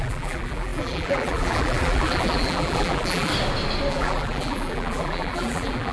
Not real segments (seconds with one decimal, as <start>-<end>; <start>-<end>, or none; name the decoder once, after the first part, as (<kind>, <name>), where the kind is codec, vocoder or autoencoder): 0.0-3.3 (vocoder, BigVGAN v2); 3.9-5.9